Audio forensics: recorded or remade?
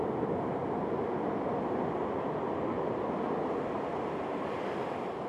recorded